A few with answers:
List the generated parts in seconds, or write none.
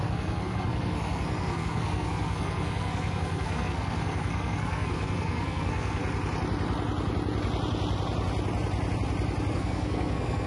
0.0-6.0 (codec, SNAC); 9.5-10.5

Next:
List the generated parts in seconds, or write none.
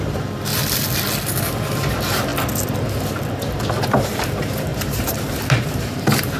0.0-0.5 (vocoder, BigVGAN v2); 1.9-2.3; 4.0-6.4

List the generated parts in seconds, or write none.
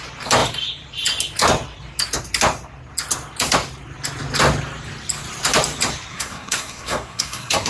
6.1-7.7 (codec, SNAC)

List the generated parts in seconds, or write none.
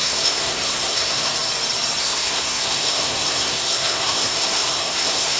0.0-1.3 (codec, SNAC); 2.0-5.4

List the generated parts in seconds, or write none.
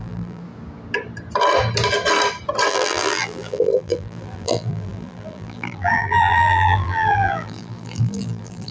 0.0-0.4 (vocoder, BigVGAN v2); 2.7-8.7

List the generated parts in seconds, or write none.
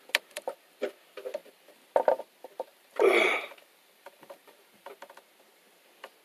2.7-4.9 (vocoder, BigVGAN v2)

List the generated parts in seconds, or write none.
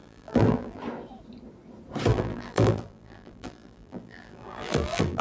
0.0-0.8 (vocoder, BigVGAN v2); 2.1-5.2